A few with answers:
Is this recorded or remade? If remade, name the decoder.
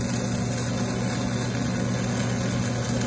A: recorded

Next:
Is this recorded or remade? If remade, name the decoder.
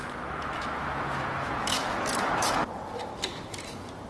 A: remade, autoencoder, DAC-VAE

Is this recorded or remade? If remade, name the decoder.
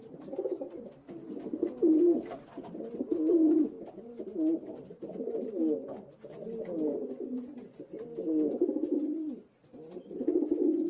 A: recorded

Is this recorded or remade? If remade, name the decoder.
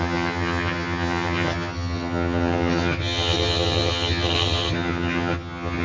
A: remade, vocoder, HiFi-GAN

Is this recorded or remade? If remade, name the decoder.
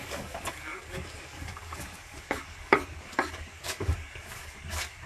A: remade, codec, DAC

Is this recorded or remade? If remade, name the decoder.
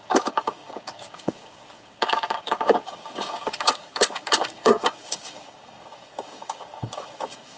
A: remade, codec, DAC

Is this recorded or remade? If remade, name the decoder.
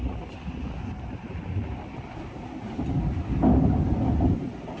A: recorded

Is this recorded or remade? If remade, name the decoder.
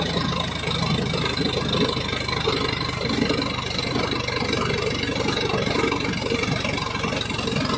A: recorded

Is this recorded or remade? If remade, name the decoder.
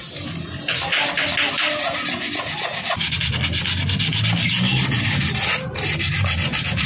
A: recorded